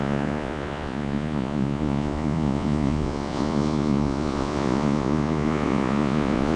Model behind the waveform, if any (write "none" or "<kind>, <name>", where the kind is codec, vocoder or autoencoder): vocoder, Vocos